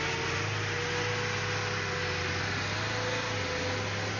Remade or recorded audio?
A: recorded